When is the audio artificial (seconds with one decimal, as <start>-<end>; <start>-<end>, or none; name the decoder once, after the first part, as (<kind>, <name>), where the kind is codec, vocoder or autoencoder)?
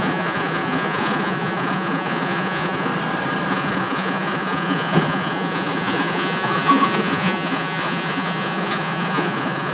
0.0-2.9 (vocoder, Vocos); 3.5-9.7